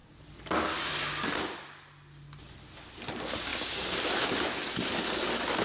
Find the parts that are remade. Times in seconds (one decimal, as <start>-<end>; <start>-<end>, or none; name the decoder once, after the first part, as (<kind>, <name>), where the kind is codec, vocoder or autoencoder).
none